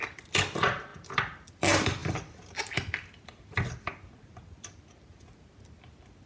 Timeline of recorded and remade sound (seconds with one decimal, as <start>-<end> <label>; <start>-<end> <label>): 0.0-6.3 recorded